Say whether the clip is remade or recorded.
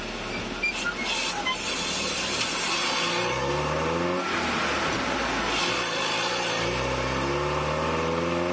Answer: recorded